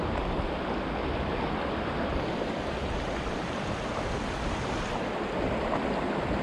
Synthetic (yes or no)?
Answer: no